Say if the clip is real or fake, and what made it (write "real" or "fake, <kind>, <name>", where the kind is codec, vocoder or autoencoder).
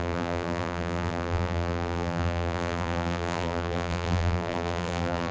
fake, vocoder, BigVGAN v2